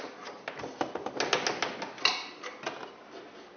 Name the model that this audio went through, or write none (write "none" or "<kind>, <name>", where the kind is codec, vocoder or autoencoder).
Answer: none